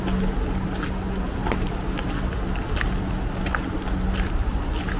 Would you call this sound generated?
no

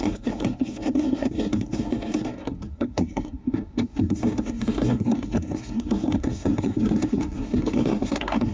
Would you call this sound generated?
yes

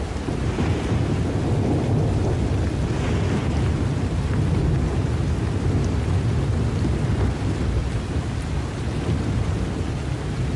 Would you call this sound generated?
no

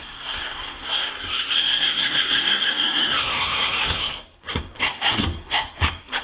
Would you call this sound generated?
yes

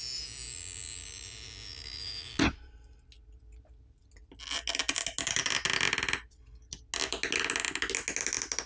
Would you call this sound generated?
no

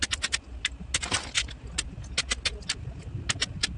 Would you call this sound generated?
no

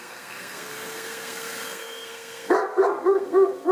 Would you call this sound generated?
yes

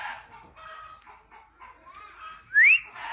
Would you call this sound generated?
no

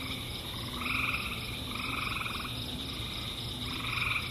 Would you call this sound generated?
no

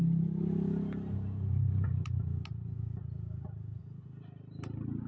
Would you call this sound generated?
no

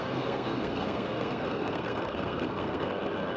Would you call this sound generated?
yes